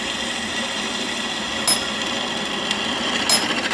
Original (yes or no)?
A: yes